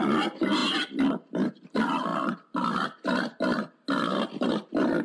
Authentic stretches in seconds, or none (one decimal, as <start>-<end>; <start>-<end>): 0.0-5.0